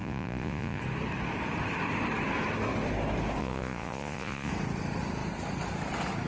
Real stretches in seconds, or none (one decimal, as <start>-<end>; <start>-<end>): 0.8-3.4; 4.5-6.3